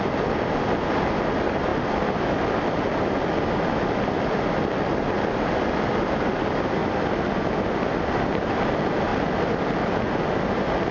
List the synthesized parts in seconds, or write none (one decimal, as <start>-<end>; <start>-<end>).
none